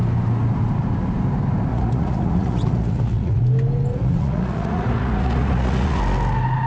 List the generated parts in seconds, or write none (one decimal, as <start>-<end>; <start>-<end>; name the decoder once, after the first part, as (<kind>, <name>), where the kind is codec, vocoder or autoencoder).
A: 1.7-3.4 (vocoder, Vocos); 3.9-6.0